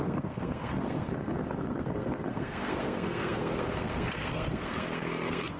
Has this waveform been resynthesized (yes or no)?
yes